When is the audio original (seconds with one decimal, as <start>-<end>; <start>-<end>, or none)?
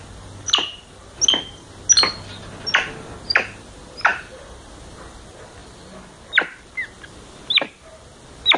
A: 0.0-4.1; 4.7-8.6